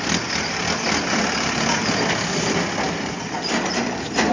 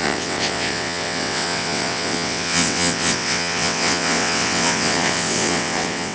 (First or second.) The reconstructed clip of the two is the second